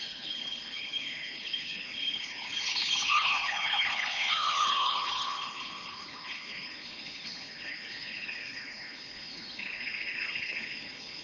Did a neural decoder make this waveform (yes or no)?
yes